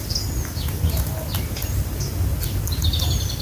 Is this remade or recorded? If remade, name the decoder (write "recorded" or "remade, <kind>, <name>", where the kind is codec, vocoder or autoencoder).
recorded